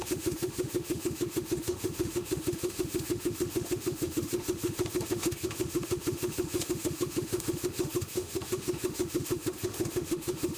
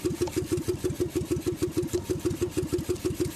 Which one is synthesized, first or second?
first